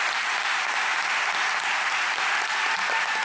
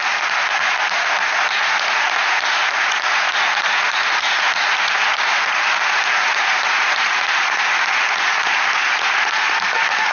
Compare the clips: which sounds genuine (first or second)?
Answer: first